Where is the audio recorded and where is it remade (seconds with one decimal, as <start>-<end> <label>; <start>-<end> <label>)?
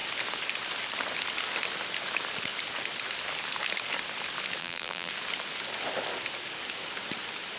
0.0-4.6 recorded; 4.6-5.1 remade; 5.1-7.6 recorded